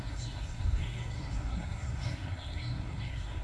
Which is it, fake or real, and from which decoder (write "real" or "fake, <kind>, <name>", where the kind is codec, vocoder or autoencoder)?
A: fake, codec, SNAC